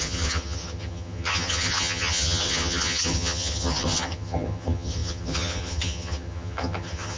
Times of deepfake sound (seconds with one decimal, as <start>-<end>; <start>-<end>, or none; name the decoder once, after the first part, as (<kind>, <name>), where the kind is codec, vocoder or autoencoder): 0.0-7.2 (vocoder, HiFi-GAN)